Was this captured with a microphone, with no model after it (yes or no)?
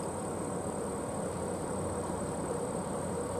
no